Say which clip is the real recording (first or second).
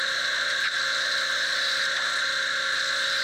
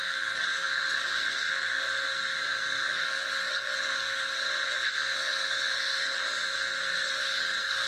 first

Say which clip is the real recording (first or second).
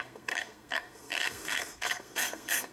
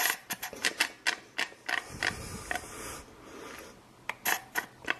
second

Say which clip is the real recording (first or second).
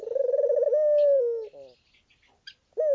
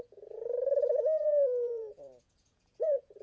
first